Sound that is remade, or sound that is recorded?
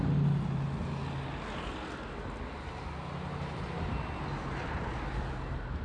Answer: recorded